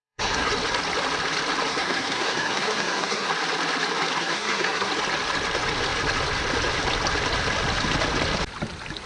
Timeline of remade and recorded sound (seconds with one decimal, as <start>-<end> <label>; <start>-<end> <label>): 0.0-0.5 remade; 0.5-1.7 recorded; 1.7-3.3 remade; 3.3-4.2 recorded; 4.2-4.9 remade; 4.9-9.1 recorded